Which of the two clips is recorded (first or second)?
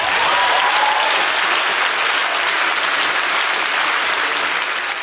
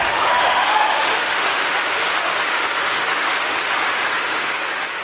first